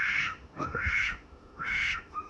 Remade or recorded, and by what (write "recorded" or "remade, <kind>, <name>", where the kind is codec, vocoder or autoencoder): remade, autoencoder, DAC-VAE